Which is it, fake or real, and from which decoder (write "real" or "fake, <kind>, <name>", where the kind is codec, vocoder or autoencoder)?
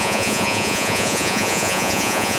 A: fake, vocoder, Vocos